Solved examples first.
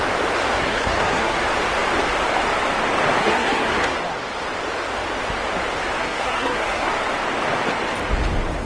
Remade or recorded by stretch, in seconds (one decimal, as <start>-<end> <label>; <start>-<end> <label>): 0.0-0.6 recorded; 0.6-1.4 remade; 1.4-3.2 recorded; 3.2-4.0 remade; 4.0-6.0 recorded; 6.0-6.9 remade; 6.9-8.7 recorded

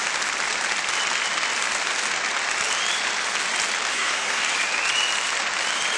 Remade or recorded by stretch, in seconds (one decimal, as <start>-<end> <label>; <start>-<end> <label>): 0.0-3.9 recorded; 3.9-4.4 remade; 4.4-6.0 recorded

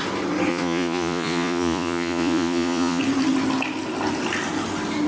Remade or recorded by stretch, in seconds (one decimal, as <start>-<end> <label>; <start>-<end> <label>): 0.0-0.5 recorded; 0.5-3.0 remade; 3.0-5.1 recorded

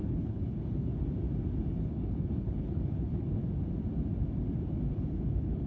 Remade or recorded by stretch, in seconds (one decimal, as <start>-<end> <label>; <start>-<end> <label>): 0.0-0.9 remade; 0.9-1.7 recorded; 1.7-3.4 remade; 3.4-4.9 recorded; 4.9-5.7 remade

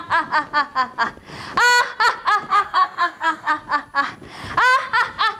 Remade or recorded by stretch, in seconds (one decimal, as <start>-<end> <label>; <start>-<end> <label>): 0.0-2.5 recorded; 2.5-3.5 remade; 3.5-5.4 recorded

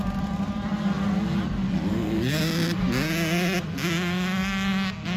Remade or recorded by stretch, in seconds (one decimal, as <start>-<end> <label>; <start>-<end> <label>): 0.0-1.9 recorded; 1.9-2.4 remade; 2.4-5.2 recorded

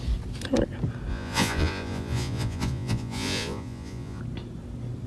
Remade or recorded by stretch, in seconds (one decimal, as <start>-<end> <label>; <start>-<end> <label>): 0.0-1.1 recorded; 1.1-4.2 remade; 4.2-5.1 recorded